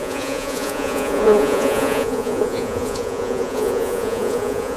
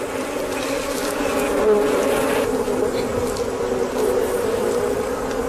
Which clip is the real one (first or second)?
second